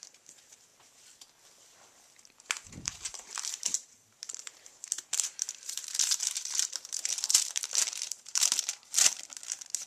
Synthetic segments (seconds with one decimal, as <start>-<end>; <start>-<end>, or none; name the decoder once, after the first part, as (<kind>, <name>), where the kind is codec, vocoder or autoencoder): 0.0-0.7 (vocoder, BigVGAN v2); 2.7-9.9